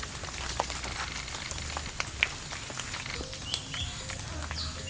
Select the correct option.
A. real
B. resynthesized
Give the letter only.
A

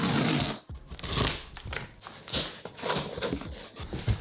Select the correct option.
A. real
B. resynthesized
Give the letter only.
A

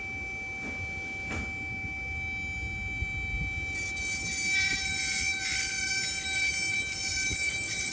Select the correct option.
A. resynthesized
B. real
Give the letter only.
B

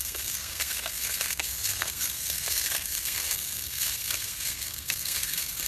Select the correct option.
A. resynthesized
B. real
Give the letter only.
A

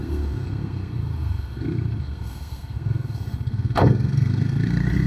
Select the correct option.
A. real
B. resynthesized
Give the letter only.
B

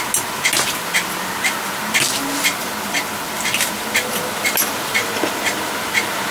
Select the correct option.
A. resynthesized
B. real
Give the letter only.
B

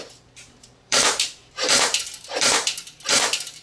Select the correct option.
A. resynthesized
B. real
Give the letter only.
A